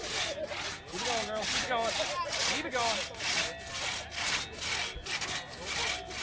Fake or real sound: real